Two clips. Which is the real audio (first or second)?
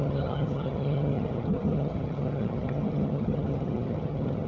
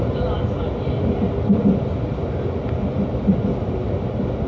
second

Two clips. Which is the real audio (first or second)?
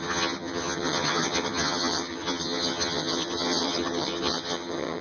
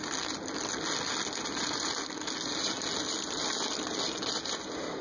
second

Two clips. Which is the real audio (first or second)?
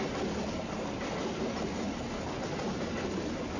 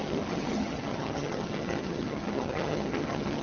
first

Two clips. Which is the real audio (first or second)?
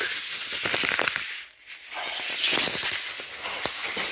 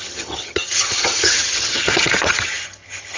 first